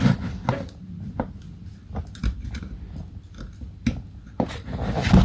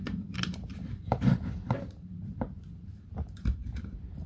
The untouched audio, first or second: first